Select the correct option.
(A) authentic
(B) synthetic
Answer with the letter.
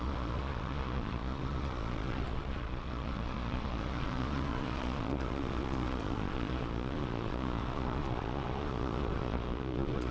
B